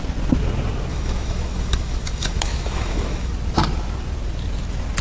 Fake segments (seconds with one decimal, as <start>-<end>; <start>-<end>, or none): 0.9-3.3